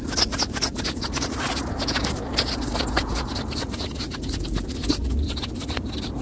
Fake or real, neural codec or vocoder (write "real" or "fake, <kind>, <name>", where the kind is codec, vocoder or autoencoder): real